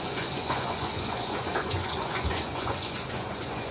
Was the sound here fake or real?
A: fake